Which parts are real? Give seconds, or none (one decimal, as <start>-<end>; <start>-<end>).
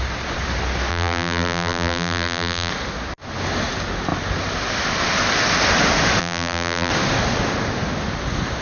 0.0-0.9; 2.7-6.2; 6.9-8.6